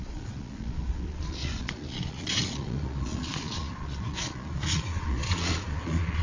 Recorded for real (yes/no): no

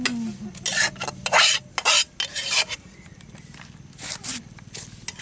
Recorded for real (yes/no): yes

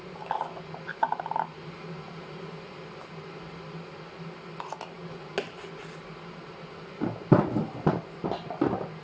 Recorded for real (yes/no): yes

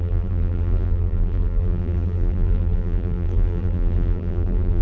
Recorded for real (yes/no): no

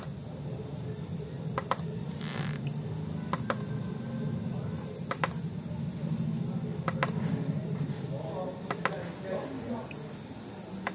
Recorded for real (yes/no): yes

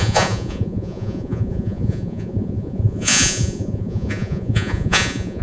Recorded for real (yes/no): no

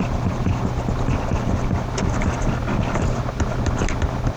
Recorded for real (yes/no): yes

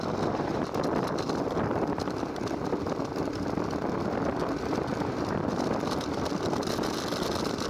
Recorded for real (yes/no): yes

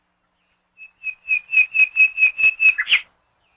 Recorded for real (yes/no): yes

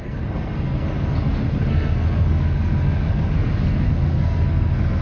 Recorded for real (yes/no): no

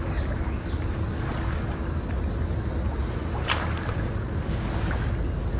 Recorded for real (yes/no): yes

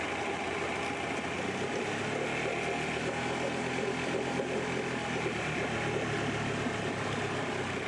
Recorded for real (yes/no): yes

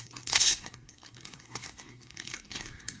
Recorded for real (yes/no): no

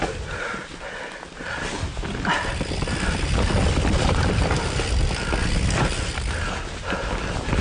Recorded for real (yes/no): yes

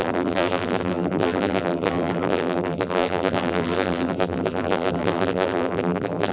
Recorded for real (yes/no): no